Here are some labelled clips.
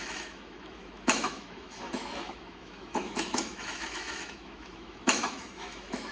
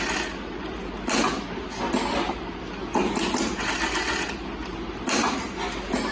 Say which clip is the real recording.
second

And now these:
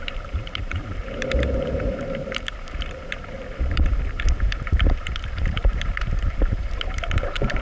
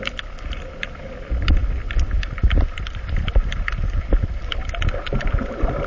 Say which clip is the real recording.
second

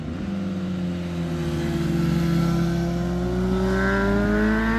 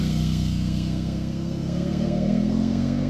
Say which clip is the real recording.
first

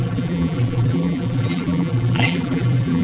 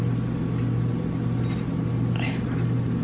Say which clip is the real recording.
second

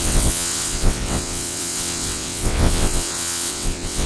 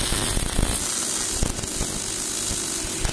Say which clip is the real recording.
second